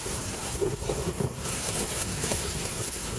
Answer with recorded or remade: remade